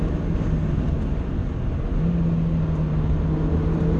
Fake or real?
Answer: real